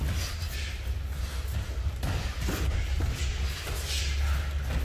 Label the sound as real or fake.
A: real